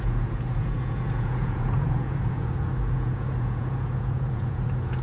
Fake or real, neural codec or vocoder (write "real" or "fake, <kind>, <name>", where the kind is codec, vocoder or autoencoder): fake, vocoder, Vocos